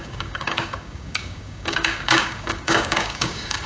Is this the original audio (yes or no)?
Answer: no